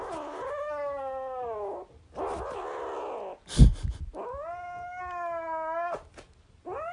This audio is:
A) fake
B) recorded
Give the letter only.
B